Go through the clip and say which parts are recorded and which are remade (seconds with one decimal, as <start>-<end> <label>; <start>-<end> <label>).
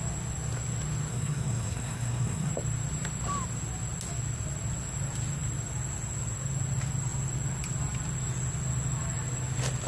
0.0-1.1 recorded; 1.1-2.5 remade; 2.5-9.9 recorded